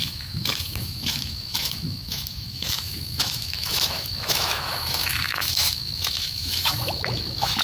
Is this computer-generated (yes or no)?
yes